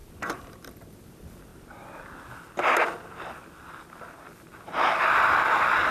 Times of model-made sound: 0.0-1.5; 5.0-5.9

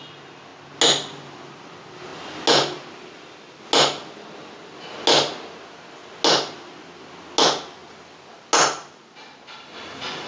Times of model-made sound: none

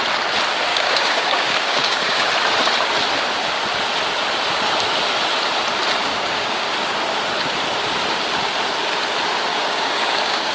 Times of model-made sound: 0.7-2.3; 6.1-6.7; 9.5-10.5

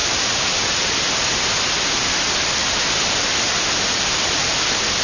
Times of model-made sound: none